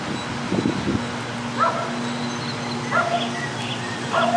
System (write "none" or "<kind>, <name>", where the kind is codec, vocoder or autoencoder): none